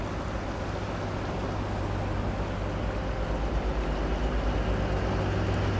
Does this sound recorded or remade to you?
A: recorded